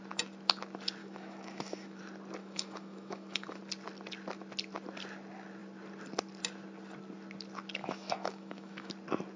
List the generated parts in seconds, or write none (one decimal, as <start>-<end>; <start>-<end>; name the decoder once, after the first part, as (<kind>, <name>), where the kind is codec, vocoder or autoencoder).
1.0-2.0 (autoencoder, DAC-VAE); 2.4-3.6; 7.8-8.9